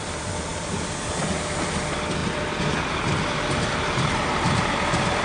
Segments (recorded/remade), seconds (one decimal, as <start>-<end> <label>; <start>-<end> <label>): 0.0-5.2 recorded